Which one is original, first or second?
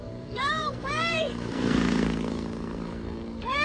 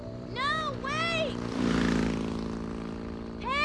second